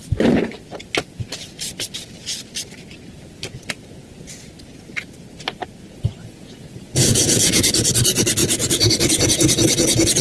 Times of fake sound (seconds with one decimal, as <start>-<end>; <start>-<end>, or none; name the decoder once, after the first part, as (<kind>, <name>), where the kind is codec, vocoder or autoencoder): 6.2-7.9 (vocoder, Vocos); 8.4-10.2